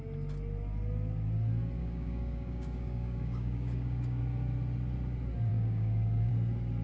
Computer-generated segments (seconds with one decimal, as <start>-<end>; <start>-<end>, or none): 1.8-4.2; 5.5-6.3